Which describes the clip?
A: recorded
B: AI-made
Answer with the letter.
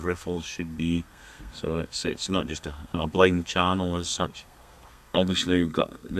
B